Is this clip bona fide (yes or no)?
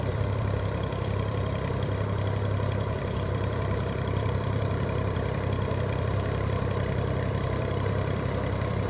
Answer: no